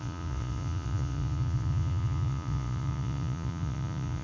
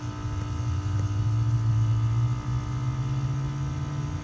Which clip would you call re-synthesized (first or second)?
first